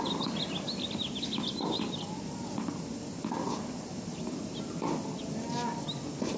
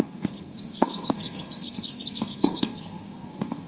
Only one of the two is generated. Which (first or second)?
second